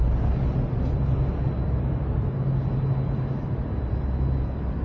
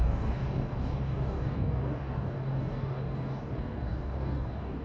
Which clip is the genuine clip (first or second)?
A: first